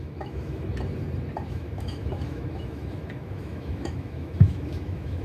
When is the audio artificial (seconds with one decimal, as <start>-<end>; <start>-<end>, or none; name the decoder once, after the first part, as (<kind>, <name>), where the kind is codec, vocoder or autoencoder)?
0.0-0.7 (autoencoder, DAC-VAE); 1.5-5.2